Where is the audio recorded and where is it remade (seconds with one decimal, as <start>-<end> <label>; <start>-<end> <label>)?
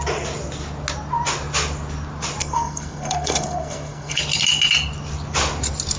0.0-2.4 recorded; 2.4-4.2 remade; 4.2-6.0 recorded